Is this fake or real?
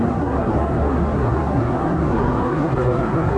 fake